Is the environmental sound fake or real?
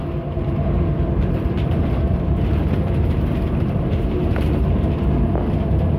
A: fake